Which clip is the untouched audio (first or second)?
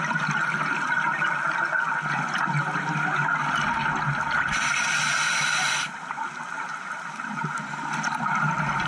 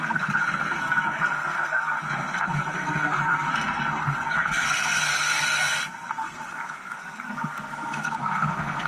first